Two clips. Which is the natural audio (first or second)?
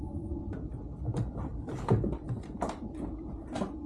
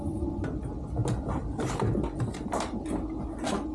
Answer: second